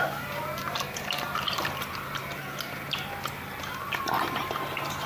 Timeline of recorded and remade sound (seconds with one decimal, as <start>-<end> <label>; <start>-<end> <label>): 0.0-5.1 recorded